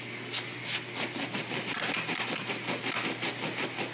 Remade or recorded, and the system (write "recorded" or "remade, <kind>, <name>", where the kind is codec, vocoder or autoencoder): recorded